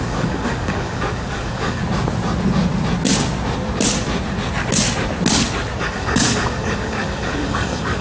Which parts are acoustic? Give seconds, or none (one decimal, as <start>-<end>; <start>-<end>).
1.8-5.8